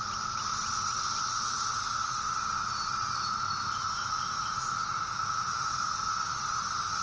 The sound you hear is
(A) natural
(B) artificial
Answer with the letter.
A